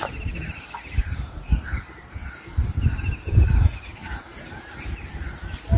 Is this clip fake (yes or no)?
no